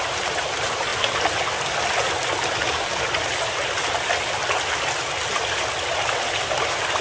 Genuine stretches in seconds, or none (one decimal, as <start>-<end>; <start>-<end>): 0.0-7.0